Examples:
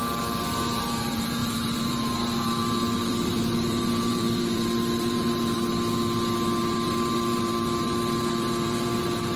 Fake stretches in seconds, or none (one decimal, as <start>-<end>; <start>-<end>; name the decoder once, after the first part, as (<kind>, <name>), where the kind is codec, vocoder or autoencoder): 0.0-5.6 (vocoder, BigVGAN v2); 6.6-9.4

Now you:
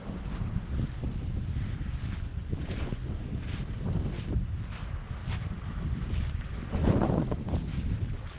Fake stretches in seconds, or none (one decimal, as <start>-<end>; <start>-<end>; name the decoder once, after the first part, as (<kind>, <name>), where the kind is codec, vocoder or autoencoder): 2.3-3.0 (vocoder, Vocos); 6.8-7.5

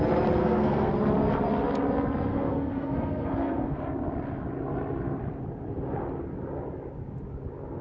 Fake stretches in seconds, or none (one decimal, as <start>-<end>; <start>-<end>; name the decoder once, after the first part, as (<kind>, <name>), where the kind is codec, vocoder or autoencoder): 0.4-0.9 (codec, SNAC); 2.3-3.8